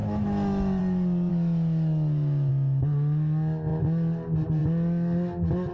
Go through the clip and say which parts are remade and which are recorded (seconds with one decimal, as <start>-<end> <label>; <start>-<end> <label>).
0.0-0.8 remade; 0.8-1.3 recorded; 1.3-2.5 remade; 2.5-5.7 recorded